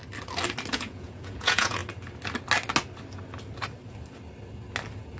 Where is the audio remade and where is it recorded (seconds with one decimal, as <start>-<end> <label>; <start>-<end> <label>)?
0.0-0.7 recorded; 0.7-1.8 remade; 1.8-5.2 recorded